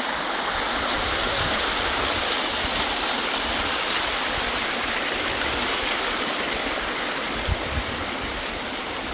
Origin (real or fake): real